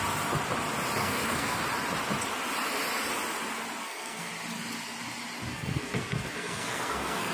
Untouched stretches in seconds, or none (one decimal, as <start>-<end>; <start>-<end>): 0.0-1.0; 1.6-3.8; 4.3-5.5